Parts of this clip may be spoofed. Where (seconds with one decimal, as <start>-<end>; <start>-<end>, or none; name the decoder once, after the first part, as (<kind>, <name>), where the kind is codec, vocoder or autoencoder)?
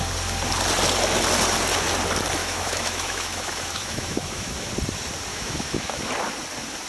2.4-4.7 (autoencoder, DAC-VAE); 5.3-6.1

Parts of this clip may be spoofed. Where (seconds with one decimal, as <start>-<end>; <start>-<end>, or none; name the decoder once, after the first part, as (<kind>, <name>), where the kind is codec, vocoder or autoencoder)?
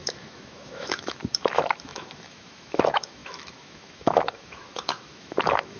0.0-5.8 (autoencoder, DAC-VAE)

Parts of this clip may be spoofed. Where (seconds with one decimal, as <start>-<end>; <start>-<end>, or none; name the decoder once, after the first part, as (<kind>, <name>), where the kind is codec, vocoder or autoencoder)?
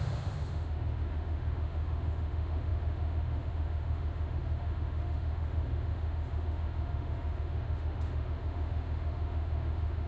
0.0-10.1 (autoencoder, DAC-VAE)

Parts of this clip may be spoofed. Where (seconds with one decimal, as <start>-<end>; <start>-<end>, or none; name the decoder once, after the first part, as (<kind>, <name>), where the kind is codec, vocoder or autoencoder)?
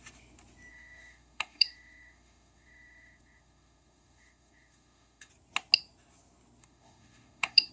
0.7-5.3 (autoencoder, DAC-VAE); 6.6-7.7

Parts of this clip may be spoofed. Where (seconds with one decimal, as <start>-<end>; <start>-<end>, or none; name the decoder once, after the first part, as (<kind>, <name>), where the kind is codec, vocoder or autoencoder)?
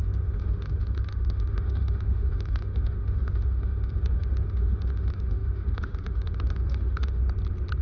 0.0-7.2 (autoencoder, DAC-VAE)